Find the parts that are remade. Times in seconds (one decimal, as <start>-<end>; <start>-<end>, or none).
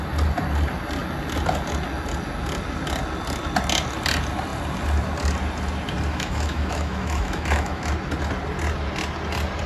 6.1-7.9